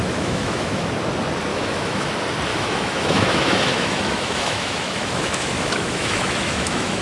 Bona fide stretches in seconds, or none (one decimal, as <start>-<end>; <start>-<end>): 0.9-1.5; 2.1-2.5

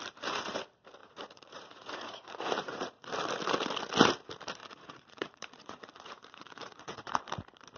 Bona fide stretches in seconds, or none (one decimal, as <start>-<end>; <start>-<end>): 0.0-1.0; 3.1-4.6; 7.2-7.8

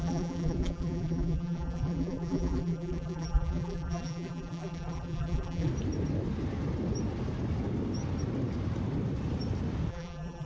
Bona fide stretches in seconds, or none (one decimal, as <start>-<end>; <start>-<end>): 5.7-9.9

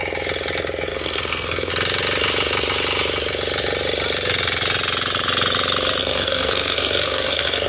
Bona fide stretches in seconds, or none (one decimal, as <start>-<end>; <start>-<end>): 0.0-0.9; 1.7-6.0

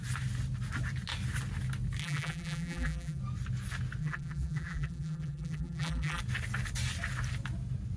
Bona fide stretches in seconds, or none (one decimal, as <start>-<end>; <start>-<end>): 0.0-2.0; 3.2-4.0; 6.2-8.0

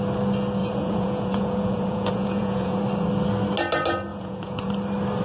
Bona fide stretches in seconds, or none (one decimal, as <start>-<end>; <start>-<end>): 0.0-0.6; 2.8-4.1; 4.7-5.2

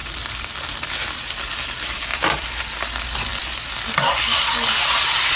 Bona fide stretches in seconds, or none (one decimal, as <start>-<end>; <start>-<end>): 0.6-2.1; 2.6-3.3